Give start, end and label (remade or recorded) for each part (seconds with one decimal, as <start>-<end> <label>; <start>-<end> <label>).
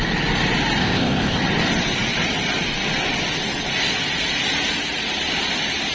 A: 0.0-0.8 recorded; 0.8-1.4 remade; 1.4-5.9 recorded